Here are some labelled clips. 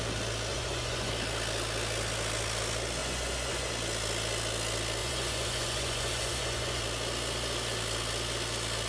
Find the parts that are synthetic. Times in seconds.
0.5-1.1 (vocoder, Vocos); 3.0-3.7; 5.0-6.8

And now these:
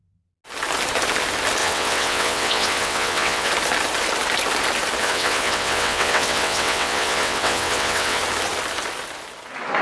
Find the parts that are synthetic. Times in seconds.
1.6-3.5 (vocoder, WaveNeXt); 5.0-8.2